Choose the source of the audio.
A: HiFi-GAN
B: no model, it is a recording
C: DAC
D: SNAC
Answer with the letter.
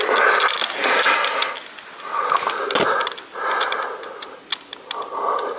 B